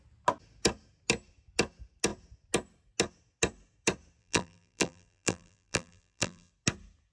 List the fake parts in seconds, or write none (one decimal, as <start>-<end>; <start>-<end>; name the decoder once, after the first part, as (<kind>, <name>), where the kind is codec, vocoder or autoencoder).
4.2-6.5 (vocoder, BigVGAN v2)